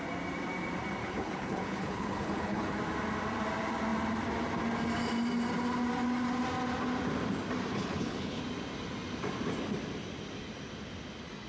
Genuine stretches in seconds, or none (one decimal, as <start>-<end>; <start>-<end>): 0.0-1.0; 2.7-7.7; 8.4-11.5